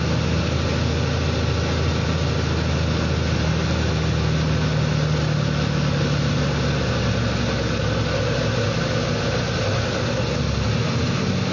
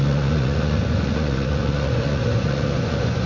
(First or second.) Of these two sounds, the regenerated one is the second